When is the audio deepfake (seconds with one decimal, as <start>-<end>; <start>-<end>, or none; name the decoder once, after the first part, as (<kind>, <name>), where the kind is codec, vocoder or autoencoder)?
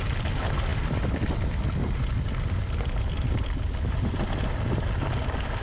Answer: none